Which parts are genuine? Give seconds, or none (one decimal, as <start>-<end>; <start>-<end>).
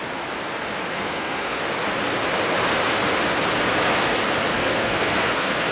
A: 0.0-0.9; 1.6-4.5